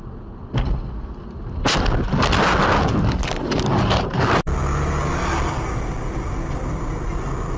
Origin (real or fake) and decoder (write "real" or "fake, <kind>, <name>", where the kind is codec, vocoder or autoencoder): real